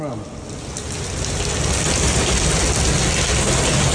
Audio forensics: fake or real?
real